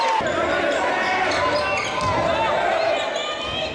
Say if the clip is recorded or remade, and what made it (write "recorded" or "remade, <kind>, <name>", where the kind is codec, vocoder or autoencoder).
recorded